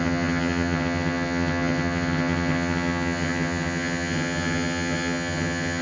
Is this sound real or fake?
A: fake